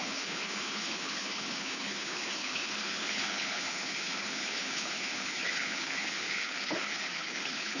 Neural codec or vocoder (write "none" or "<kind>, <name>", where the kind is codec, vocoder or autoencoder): codec, HILCodec